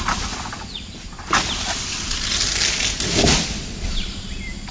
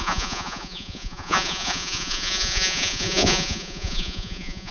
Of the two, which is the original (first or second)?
first